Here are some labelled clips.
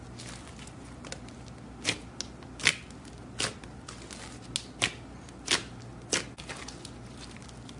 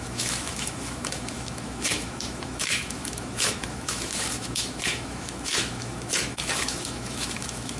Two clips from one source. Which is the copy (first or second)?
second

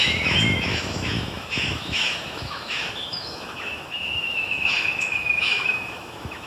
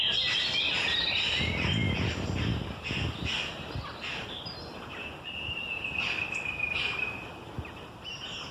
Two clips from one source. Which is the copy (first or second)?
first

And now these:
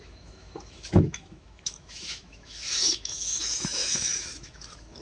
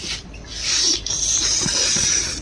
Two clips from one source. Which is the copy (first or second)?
first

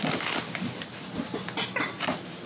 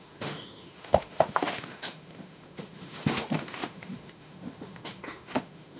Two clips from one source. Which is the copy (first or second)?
second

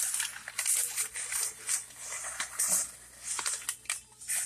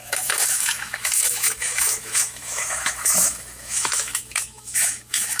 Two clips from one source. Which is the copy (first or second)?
second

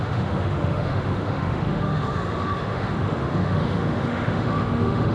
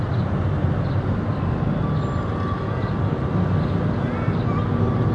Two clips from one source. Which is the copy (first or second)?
first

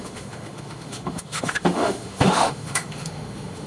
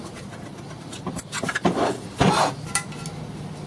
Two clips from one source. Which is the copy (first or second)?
first